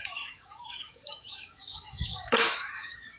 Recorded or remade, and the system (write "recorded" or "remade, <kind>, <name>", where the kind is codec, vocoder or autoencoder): remade, autoencoder, DAC-VAE